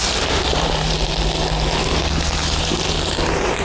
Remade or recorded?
recorded